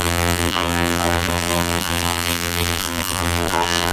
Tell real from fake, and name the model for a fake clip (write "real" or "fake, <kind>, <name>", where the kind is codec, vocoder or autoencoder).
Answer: fake, vocoder, BigVGAN v2